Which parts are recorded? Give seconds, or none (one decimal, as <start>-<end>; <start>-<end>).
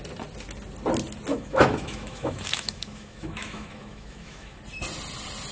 0.0-1.3; 4.6-5.5